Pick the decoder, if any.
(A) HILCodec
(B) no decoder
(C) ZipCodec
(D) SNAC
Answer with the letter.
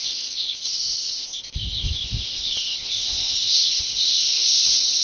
C